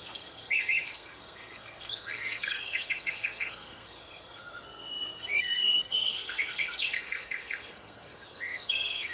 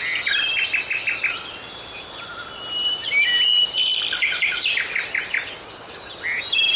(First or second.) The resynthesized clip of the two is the first